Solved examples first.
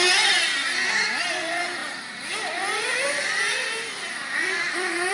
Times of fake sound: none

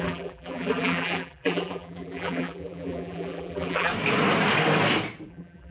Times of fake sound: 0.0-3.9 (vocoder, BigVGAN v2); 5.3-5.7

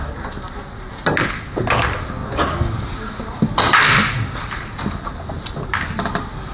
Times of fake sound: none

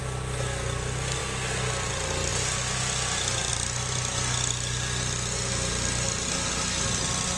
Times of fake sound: none

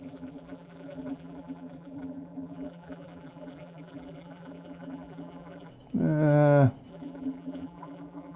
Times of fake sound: 0.0-5.7 (vocoder, BigVGAN v2); 6.9-8.4